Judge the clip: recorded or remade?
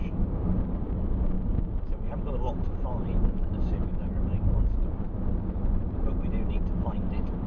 remade